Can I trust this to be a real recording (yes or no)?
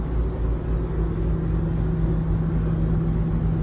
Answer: yes